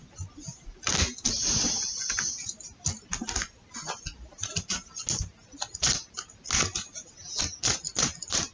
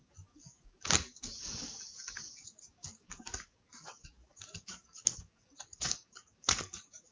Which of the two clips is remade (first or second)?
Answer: second